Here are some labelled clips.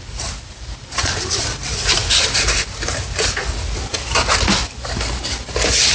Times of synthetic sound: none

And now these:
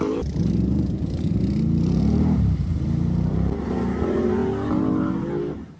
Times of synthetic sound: 0.0-4.4 (vocoder, BigVGAN v2); 5.2-5.8